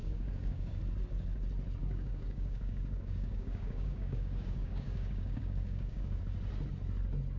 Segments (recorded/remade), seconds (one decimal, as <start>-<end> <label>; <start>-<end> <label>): 0.0-0.8 remade; 0.8-1.8 recorded; 1.8-6.2 remade; 6.2-7.4 recorded